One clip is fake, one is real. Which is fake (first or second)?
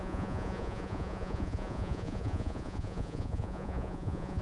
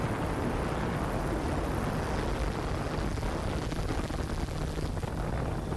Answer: first